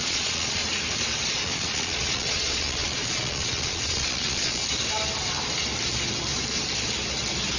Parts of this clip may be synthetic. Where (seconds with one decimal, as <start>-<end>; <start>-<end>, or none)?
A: 0.0-0.6; 1.3-4.6